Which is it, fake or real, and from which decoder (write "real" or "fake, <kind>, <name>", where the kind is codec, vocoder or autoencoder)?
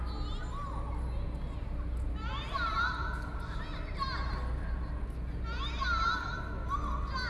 real